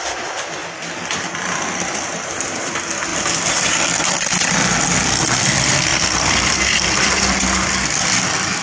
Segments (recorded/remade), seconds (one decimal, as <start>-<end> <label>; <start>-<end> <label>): 0.0-0.6 recorded; 0.6-2.7 remade; 2.7-3.1 recorded; 3.1-4.0 remade; 4.0-8.6 recorded